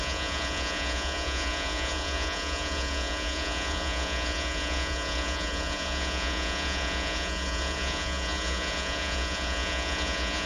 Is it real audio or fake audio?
fake